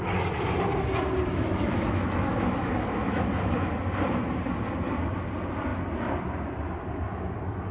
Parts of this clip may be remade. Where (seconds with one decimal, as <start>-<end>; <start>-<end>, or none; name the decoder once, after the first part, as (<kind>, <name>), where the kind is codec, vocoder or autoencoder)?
1.3-3.7 (autoencoder, DAC-VAE)